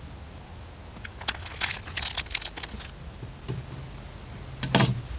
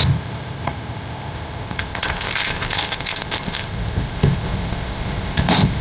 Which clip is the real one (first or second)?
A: first